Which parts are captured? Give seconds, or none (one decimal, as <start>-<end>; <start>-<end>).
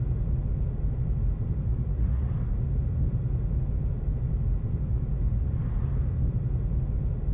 0.0-1.8; 2.3-7.3